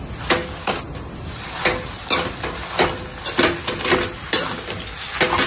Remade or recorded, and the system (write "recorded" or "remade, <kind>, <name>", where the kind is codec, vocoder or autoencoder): recorded